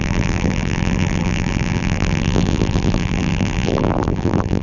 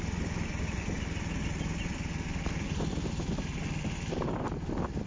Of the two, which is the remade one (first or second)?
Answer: first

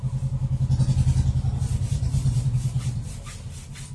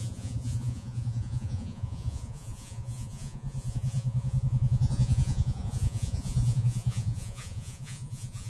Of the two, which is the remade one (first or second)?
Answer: second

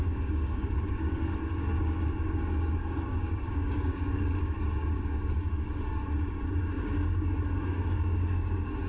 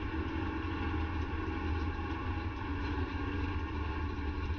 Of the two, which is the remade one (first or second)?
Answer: first